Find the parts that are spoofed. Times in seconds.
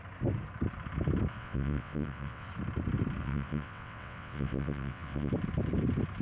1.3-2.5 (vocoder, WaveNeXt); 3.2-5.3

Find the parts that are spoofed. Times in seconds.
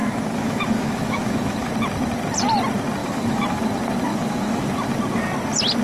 0.0-1.7 (autoencoder, DAC-VAE); 3.0-3.6; 4.1-4.7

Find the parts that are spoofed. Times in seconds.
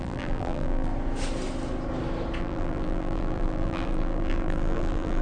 0.0-0.9 (vocoder, BigVGAN v2); 2.4-5.2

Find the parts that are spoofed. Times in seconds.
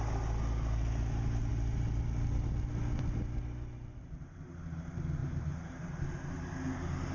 5.2-6.0 (vocoder, BigVGAN v2)